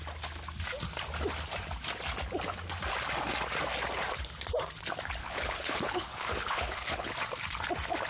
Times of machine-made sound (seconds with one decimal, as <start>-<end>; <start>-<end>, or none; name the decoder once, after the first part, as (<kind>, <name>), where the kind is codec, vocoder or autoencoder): 5.2-7.1 (codec, HILCodec)